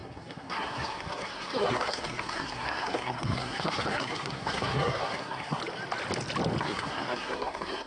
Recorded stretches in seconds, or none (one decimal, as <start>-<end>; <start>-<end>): 5.6-6.6

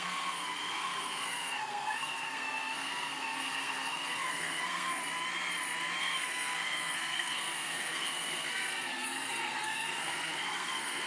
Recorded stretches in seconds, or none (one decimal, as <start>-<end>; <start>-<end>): 5.0-6.0

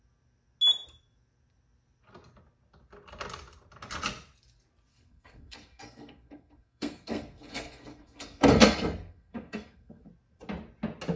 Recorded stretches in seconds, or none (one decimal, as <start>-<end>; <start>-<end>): 0.0-4.9; 10.1-11.2

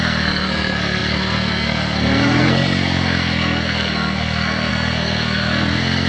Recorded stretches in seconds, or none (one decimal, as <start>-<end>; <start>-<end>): none

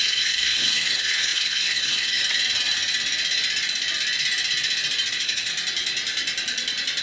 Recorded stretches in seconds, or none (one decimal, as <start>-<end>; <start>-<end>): 2.2-5.1; 5.5-7.0

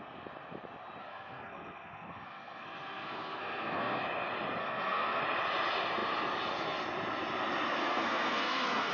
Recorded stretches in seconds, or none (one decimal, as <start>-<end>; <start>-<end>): 0.0-1.0; 4.0-4.6; 5.2-7.8